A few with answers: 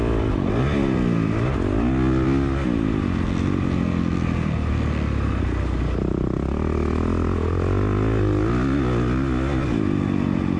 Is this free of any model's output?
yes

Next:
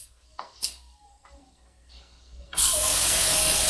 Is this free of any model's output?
no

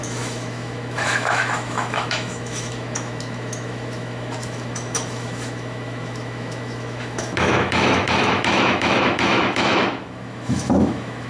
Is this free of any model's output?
no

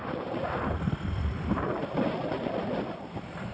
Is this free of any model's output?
yes